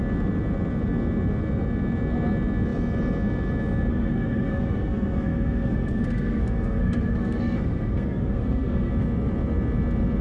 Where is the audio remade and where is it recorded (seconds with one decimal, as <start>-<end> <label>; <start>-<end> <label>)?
0.0-3.9 recorded; 3.9-8.9 remade; 8.9-10.2 recorded